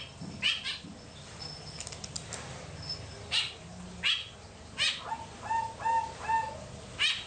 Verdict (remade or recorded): recorded